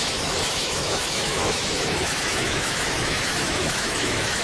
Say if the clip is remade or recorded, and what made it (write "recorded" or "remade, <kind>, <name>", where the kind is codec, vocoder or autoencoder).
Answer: remade, autoencoder, DAC-VAE